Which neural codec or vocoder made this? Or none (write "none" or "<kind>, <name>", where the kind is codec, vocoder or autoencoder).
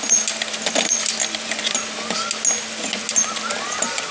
none